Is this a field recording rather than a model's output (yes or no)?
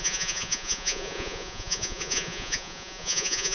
no